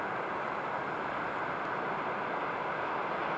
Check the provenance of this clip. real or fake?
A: real